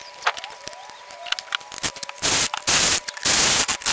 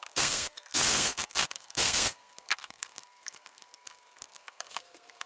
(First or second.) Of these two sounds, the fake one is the second